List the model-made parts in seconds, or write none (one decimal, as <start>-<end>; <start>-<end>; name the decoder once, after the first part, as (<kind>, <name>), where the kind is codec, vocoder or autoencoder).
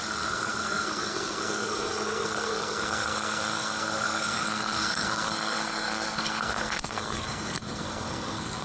0.0-8.6 (codec, SNAC)